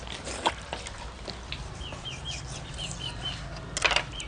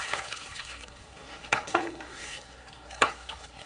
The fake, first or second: second